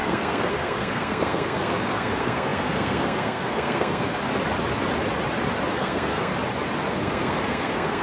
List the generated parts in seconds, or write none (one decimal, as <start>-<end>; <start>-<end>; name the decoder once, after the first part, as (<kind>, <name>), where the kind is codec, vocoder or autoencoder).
0.0-4.2 (codec, SNAC); 5.8-6.3; 6.9-8.0